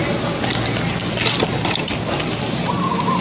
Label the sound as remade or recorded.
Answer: recorded